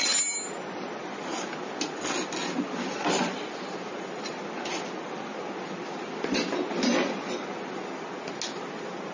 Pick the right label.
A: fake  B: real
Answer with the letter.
B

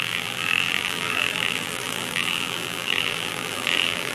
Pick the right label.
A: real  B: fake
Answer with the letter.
B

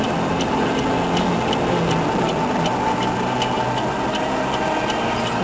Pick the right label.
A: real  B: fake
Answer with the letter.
A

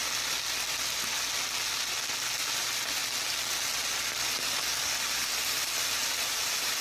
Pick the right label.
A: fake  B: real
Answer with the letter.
B